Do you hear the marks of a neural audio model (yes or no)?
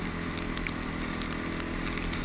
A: no